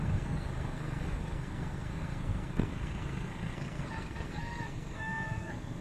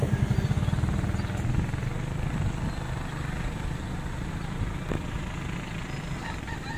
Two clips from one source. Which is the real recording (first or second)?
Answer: second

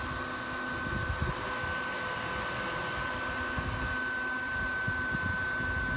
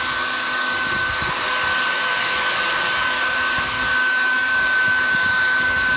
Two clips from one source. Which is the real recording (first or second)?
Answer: first